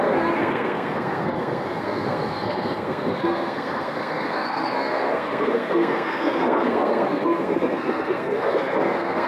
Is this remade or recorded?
remade